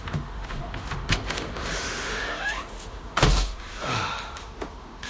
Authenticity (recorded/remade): remade